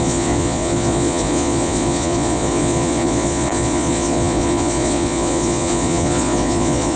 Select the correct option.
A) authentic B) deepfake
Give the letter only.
B